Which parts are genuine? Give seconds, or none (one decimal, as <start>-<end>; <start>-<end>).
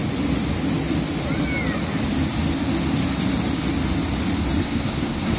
0.0-4.6